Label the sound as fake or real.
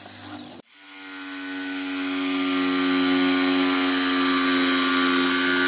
real